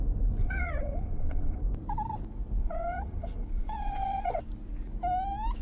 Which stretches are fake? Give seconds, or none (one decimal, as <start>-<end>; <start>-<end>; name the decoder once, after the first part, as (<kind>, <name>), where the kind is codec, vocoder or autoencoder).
0.4-1.6 (vocoder, WaveNeXt); 2.6-4.4